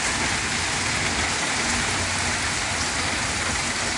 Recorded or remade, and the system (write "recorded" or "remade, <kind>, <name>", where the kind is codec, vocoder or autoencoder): recorded